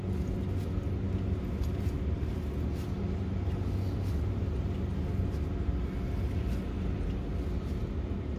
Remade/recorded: recorded